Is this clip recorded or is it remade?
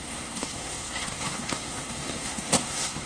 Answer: remade